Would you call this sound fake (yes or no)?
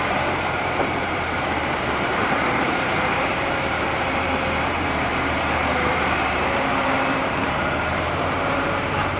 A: yes